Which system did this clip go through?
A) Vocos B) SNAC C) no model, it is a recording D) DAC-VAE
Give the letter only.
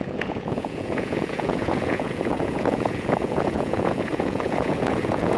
A